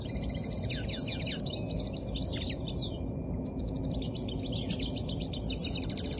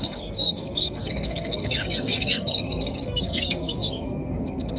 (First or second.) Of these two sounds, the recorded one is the first